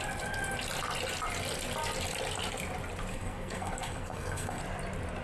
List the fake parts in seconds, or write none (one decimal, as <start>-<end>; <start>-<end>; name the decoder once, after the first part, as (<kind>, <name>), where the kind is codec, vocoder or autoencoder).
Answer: 3.1-4.6 (codec, SNAC)